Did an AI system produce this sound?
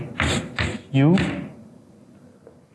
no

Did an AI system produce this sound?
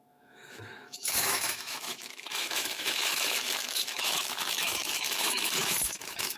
yes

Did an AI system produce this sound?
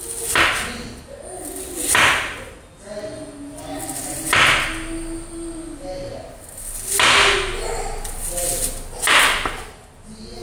no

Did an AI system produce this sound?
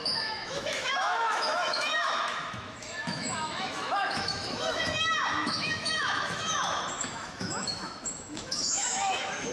yes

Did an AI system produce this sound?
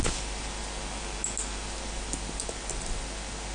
no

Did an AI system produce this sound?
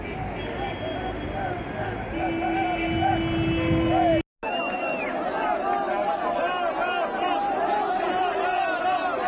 no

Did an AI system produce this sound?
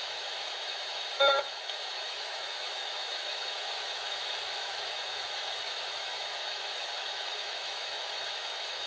yes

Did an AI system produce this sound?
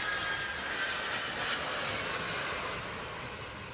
no